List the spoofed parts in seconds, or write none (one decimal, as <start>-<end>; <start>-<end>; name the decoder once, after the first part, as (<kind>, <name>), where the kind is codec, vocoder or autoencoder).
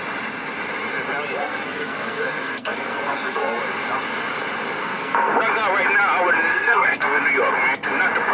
1.4-3.6 (codec, SNAC); 4.8-5.4; 6.5-7.2